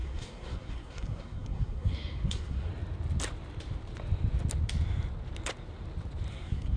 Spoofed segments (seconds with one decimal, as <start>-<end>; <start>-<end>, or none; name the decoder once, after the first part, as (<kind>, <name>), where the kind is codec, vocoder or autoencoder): 0.0-2.7 (codec, SNAC); 6.3-6.8

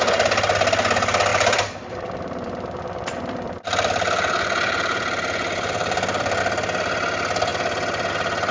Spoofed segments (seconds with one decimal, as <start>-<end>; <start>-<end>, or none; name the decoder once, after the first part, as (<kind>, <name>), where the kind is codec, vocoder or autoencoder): 1.3-6.4 (vocoder, BigVGAN v2)

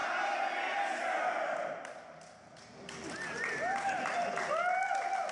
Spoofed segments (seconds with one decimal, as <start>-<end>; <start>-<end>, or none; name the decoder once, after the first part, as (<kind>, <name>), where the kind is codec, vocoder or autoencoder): none

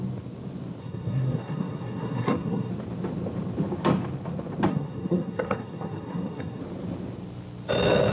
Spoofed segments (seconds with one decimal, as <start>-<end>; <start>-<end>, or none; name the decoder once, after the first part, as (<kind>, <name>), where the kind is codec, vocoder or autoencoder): 0.8-2.7 (codec, SNAC); 4.7-6.6

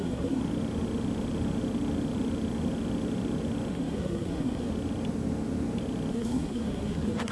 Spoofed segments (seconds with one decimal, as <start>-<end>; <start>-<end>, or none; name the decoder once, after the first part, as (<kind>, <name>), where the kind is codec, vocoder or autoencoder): 0.0-0.4 (codec, SNAC); 3.7-4.7; 6.1-7.3

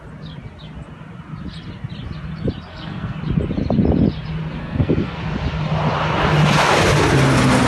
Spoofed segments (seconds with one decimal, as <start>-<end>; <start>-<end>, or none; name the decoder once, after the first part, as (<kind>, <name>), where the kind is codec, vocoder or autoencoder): 2.7-3.2 (codec, SNAC); 4.6-5.2